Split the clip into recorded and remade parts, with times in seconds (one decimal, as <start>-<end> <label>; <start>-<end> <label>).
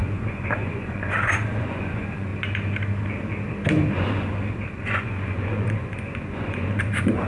0.0-2.3 remade; 2.3-3.9 recorded; 3.9-4.3 remade; 4.3-4.8 recorded; 4.8-7.3 remade